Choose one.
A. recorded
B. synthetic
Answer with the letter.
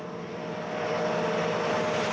A